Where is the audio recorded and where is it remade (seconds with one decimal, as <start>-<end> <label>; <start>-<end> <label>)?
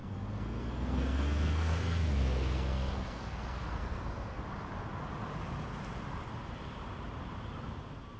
0.0-4.4 remade; 4.4-8.2 recorded